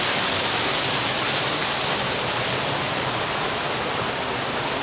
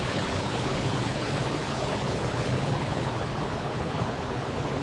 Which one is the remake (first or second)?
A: second